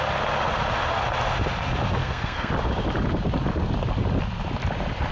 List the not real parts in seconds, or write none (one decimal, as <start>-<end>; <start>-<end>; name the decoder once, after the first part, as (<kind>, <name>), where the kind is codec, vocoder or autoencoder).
2.0-2.5 (codec, SNAC)